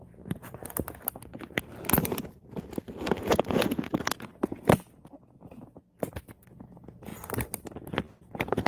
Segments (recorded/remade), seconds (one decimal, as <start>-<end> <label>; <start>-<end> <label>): 0.0-0.6 remade; 0.6-3.2 recorded; 3.2-7.1 remade; 7.1-8.2 recorded; 8.2-8.7 remade